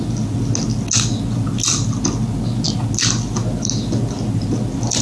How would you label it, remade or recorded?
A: recorded